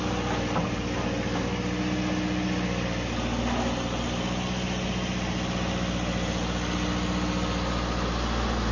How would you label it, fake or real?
real